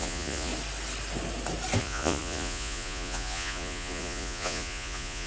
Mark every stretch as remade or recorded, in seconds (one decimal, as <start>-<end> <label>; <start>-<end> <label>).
0.0-0.5 remade; 0.5-1.8 recorded; 1.8-5.3 remade